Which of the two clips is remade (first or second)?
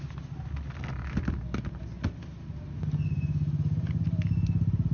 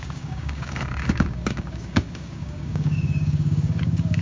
second